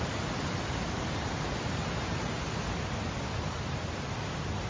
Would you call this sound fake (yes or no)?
no